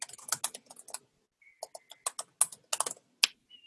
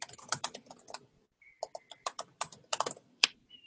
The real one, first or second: first